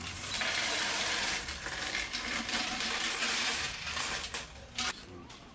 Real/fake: fake